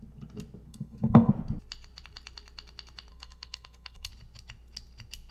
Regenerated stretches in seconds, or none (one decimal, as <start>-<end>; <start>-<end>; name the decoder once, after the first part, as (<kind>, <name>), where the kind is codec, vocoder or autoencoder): 0.7-1.3 (codec, SNAC); 3.1-4.1